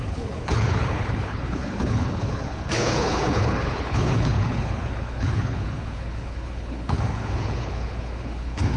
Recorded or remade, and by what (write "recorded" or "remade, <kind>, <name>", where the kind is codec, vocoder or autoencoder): remade, codec, HILCodec